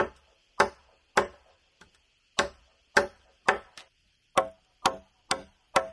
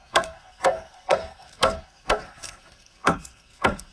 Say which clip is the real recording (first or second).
first